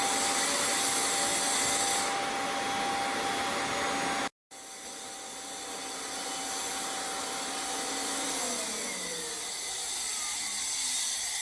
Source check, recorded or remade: recorded